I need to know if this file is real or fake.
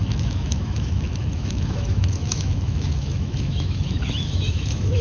fake